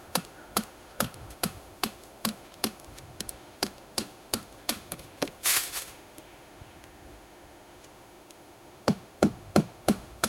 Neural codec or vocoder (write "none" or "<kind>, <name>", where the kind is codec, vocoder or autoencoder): autoencoder, DAC-VAE